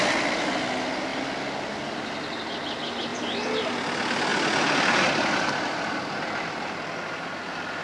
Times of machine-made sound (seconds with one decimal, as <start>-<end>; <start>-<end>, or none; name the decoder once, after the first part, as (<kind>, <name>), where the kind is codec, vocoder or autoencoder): 3.1-3.7 (vocoder, BigVGAN v2); 4.3-7.8